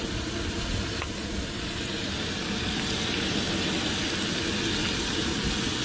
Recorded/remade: recorded